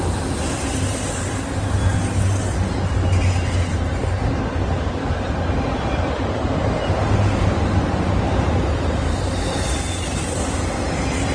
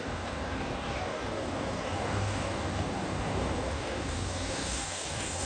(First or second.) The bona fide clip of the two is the first